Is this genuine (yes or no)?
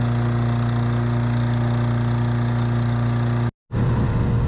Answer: yes